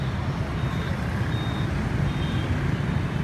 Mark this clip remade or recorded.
recorded